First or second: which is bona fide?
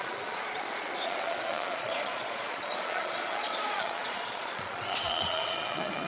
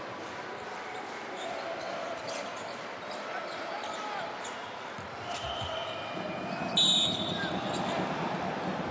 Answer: second